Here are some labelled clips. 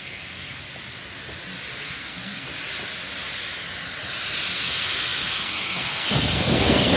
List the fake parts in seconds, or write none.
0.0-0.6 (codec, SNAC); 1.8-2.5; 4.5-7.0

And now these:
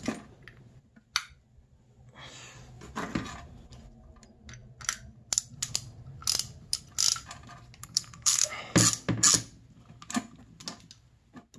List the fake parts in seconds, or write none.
7.8-8.6 (codec, SNAC)

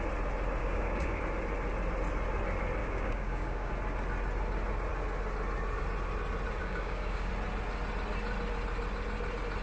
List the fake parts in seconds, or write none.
0.6-1.2 (codec, DAC); 2.8-3.7; 6.6-7.3

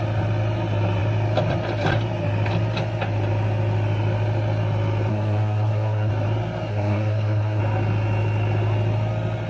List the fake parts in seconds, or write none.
5.1-6.1 (codec, SNAC); 6.7-7.6

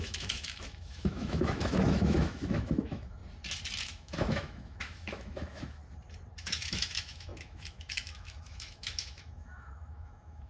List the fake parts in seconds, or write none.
0.0-3.2 (autoencoder, DAC-VAE); 3.8-5.8; 6.4-10.5

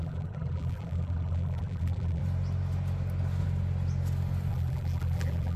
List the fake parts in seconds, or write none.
0.0-2.2 (vocoder, BigVGAN v2); 4.5-5.6

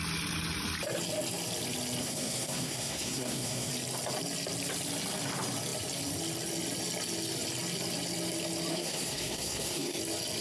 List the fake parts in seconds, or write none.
2.0-3.7 (codec, SNAC); 8.7-10.0